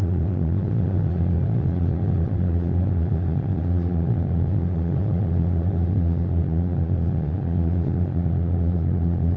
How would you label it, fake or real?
fake